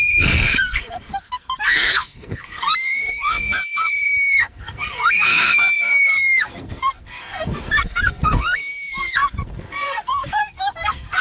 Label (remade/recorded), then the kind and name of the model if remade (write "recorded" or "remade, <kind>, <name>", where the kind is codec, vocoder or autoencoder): remade, codec, SNAC